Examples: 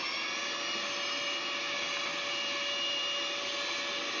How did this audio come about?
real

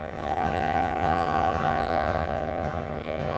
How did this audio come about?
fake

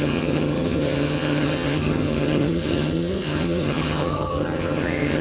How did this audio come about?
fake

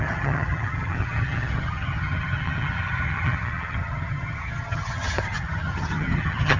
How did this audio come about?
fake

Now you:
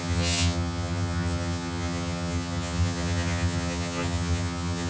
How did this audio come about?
fake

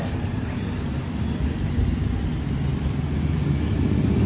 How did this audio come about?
real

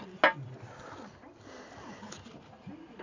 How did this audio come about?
real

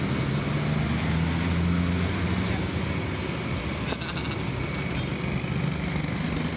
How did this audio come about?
real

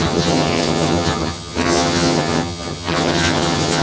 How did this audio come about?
fake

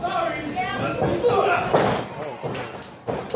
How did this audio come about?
real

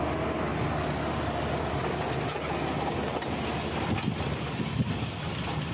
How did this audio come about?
real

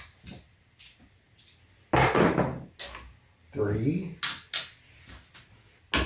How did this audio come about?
real